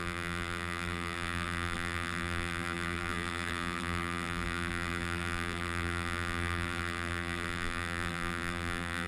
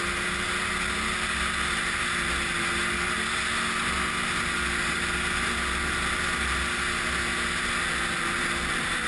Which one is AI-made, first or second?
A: first